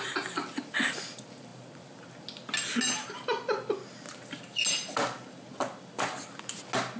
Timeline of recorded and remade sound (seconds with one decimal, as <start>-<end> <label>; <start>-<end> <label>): 0.0-7.0 recorded

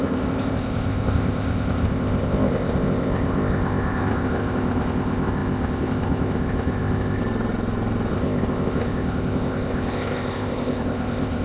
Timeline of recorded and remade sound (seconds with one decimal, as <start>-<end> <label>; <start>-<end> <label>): 0.0-7.2 remade; 7.2-8.1 recorded; 8.1-11.4 remade

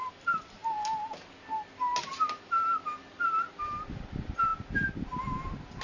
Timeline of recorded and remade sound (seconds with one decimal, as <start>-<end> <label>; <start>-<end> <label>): 0.0-5.8 recorded